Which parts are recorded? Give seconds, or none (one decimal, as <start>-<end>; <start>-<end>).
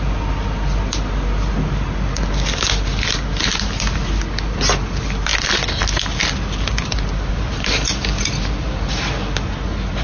0.0-10.0